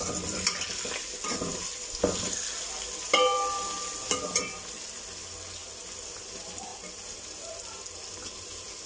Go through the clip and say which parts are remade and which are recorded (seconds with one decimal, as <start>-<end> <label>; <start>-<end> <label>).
0.0-8.9 recorded